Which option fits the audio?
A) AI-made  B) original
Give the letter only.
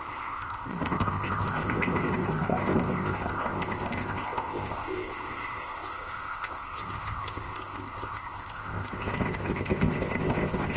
A